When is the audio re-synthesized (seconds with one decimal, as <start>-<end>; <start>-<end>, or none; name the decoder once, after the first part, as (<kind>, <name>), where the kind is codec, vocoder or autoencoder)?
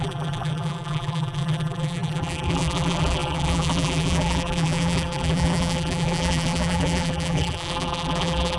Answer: 0.0-8.6 (vocoder, BigVGAN v2)